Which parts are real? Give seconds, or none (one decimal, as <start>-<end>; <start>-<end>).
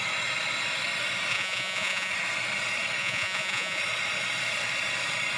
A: 0.0-1.3; 2.1-3.0; 3.8-5.4